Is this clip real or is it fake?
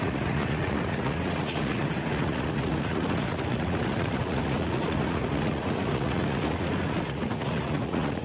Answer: fake